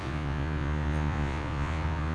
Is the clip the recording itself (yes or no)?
no